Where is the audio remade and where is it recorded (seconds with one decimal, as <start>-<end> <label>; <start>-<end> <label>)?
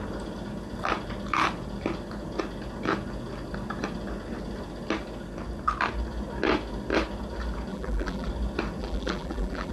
0.0-7.7 recorded; 7.7-8.3 remade; 8.3-8.8 recorded; 8.8-9.7 remade